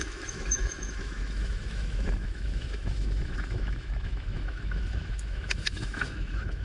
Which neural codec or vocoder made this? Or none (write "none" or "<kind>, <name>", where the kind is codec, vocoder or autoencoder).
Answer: autoencoder, DAC-VAE